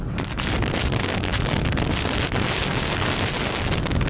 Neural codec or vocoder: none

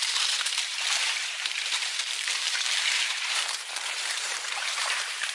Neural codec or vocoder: vocoder, BigVGAN v2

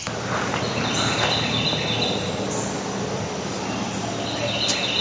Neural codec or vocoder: none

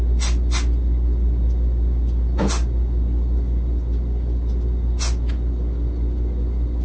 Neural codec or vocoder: none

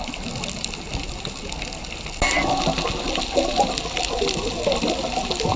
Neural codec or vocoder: none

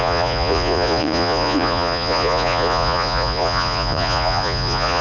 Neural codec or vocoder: vocoder, Vocos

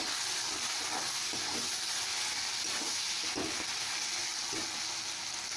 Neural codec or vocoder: none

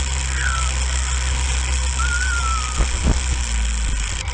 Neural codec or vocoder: none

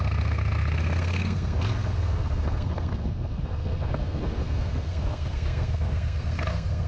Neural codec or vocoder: codec, SNAC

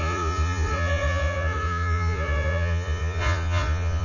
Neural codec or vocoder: vocoder, Vocos